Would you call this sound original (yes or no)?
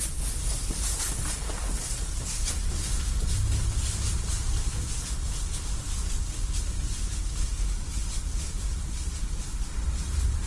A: yes